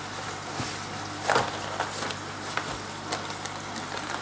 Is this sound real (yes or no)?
yes